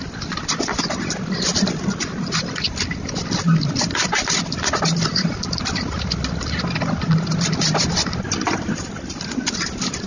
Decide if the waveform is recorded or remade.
recorded